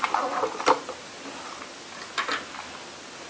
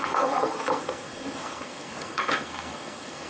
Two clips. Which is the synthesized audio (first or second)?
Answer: second